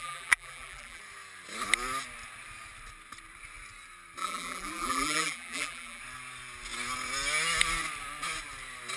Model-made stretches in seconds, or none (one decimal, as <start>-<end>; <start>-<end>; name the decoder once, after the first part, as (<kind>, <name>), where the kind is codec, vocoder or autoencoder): 0.0-1.0 (vocoder, BigVGAN v2); 4.2-6.0